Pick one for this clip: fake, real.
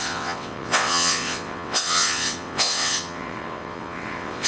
fake